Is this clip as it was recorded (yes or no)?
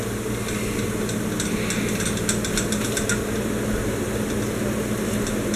yes